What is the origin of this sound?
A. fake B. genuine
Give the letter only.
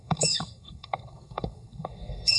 A